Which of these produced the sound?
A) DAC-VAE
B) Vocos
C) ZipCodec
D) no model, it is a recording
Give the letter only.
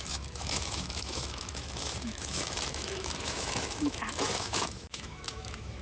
A